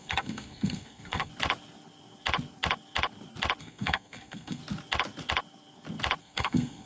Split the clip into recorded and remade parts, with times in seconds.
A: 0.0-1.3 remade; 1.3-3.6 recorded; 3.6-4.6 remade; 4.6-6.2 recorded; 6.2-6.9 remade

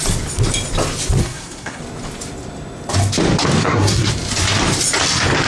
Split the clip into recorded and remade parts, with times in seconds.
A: 0.0-1.2 recorded; 1.2-1.8 remade; 1.8-3.6 recorded; 3.6-4.1 remade; 4.1-5.5 recorded

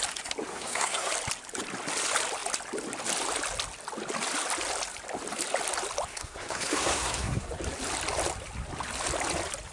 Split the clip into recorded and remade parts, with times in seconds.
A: 0.0-0.5 recorded; 0.5-1.1 remade; 1.1-6.1 recorded; 6.1-7.5 remade; 7.5-9.7 recorded

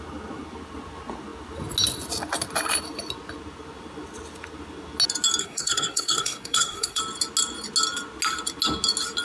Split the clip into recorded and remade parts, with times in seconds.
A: 0.0-5.4 recorded; 5.4-7.0 remade; 7.0-9.2 recorded

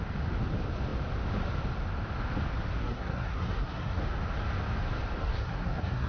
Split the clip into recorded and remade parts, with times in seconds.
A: 0.0-2.8 recorded; 2.8-4.0 remade; 4.0-5.2 recorded; 5.2-6.1 remade

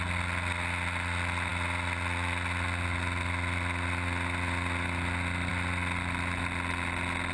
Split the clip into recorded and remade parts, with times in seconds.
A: 0.0-7.3 recorded